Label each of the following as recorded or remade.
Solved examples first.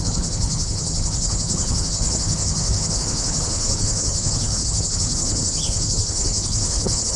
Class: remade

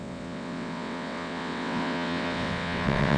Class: remade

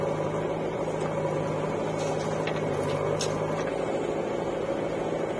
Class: recorded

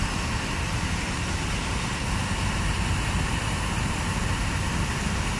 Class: recorded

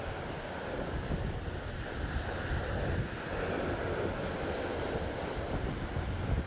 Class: recorded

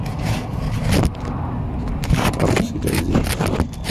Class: recorded